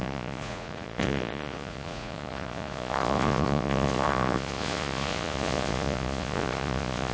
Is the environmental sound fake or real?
fake